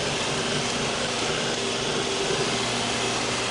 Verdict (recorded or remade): recorded